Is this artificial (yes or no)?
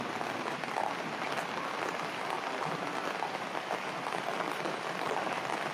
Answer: no